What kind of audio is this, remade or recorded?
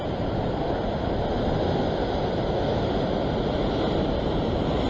recorded